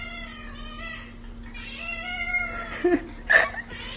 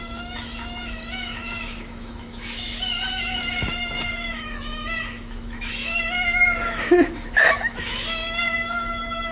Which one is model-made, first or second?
second